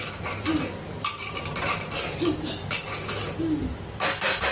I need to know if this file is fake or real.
real